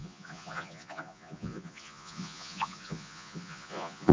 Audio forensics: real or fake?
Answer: fake